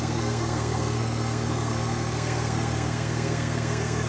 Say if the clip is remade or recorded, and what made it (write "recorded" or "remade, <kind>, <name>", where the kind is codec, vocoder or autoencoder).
remade, codec, SNAC